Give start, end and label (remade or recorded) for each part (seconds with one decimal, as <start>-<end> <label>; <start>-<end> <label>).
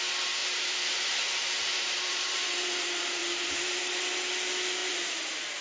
0.0-0.4 recorded; 0.4-3.8 remade; 3.8-4.8 recorded; 4.8-5.6 remade